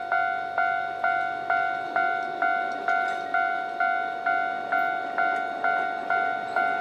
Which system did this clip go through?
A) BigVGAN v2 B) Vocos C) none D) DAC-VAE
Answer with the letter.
C